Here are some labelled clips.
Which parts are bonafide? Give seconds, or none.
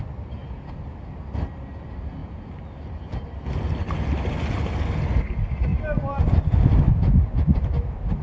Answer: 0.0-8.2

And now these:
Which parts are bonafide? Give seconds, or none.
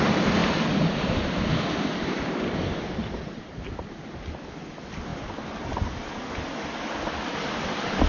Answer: 0.0-8.1